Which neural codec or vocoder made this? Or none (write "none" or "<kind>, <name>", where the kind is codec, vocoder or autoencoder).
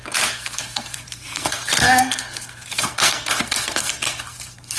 codec, SNAC